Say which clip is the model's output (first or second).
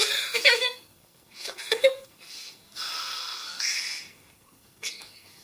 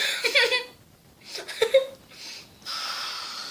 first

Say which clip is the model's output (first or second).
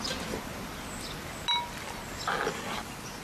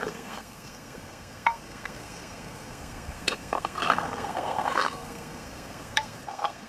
second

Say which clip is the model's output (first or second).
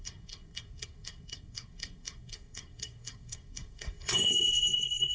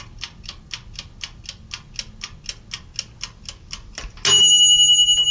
first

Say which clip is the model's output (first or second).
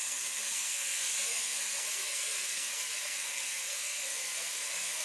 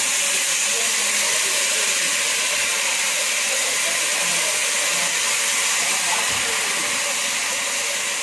first